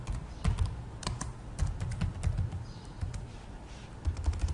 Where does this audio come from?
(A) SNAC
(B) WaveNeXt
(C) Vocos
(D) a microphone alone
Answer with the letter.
D